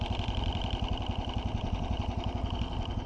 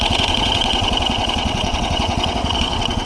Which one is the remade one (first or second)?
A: second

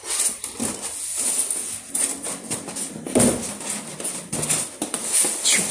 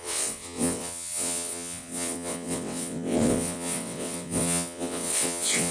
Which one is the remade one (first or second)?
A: second